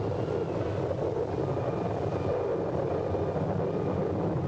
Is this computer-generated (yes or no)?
no